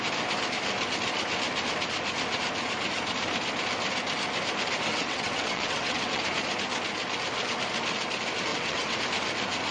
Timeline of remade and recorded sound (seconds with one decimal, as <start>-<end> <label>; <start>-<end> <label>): 0.0-4.9 recorded; 4.9-6.2 remade; 6.2-8.5 recorded; 8.5-9.0 remade; 9.0-9.7 recorded